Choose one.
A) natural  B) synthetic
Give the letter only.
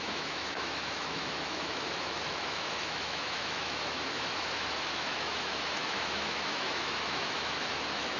B